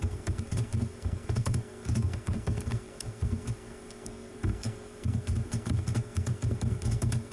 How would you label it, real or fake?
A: fake